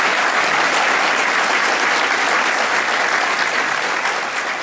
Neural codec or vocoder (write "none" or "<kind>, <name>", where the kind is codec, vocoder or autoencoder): none